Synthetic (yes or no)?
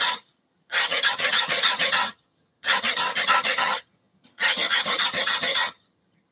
yes